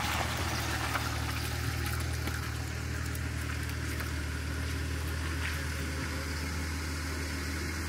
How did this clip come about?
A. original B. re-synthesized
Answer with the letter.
A